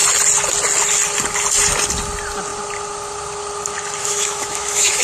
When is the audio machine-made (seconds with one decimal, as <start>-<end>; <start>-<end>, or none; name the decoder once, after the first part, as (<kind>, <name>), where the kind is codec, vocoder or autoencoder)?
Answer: 4.0-5.0 (autoencoder, DAC-VAE)

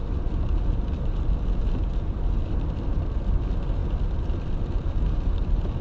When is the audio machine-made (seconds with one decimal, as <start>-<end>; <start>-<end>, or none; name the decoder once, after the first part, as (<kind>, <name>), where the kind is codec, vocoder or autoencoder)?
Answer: none